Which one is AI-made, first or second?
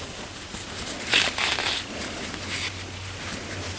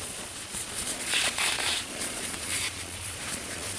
second